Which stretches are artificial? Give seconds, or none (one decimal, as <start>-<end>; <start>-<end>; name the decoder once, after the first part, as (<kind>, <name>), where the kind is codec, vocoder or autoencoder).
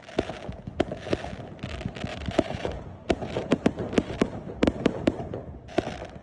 2.1-5.8 (vocoder, BigVGAN v2)